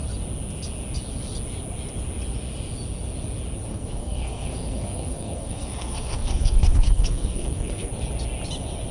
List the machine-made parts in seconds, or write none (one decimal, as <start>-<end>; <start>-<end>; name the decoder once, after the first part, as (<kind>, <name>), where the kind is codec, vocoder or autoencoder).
3.7-7.9 (codec, SNAC)